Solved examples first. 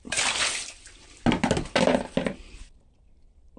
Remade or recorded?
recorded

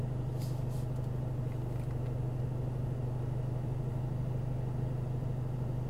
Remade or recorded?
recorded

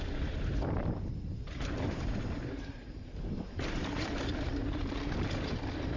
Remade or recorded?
remade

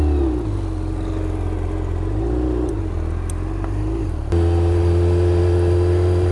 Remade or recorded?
recorded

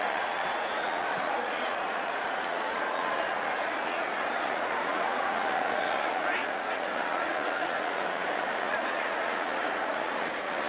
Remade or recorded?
remade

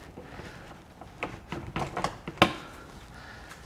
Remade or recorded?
recorded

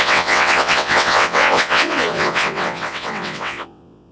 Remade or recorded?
remade